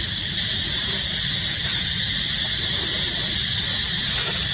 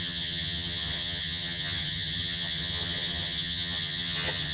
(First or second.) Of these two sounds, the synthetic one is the second